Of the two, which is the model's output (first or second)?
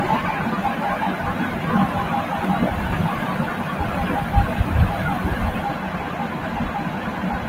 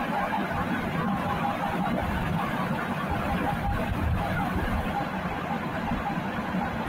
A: second